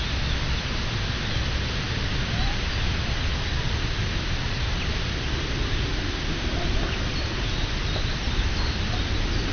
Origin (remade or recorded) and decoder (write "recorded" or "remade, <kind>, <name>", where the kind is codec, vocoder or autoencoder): recorded